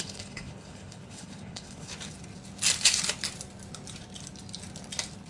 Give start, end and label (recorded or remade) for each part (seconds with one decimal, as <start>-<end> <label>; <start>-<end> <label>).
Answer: 0.0-1.9 remade; 1.9-5.3 recorded